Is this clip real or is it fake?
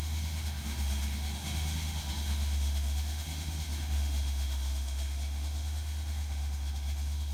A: fake